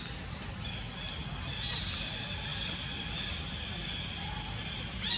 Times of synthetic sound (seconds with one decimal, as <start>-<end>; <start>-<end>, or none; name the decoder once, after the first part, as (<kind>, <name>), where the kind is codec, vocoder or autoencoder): none

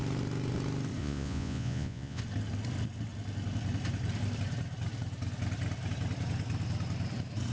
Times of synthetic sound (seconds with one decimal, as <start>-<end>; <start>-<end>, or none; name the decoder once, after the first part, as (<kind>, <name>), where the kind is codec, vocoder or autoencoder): 1.0-2.2 (vocoder, Vocos)

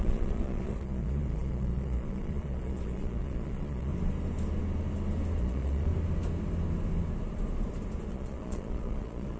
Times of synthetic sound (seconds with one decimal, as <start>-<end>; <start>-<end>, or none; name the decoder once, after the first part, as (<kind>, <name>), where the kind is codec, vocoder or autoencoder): 0.0-3.9 (vocoder, Vocos); 5.4-5.9; 8.1-9.4